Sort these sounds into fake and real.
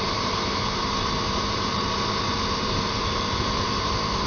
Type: fake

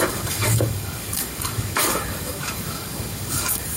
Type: fake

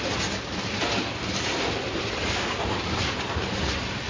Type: real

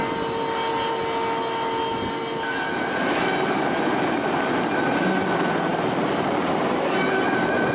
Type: real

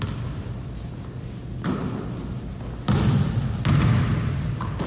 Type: real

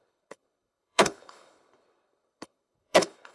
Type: fake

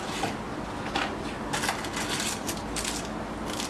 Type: real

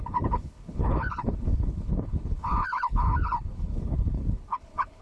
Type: fake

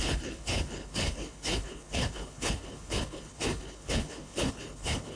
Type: fake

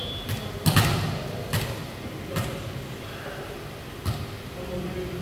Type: real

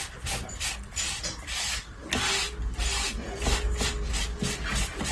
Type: real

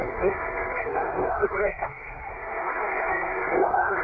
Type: fake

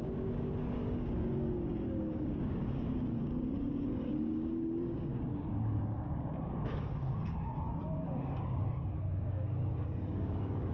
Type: fake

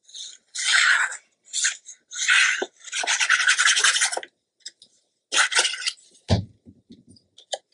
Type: real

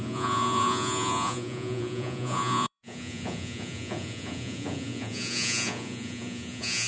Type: fake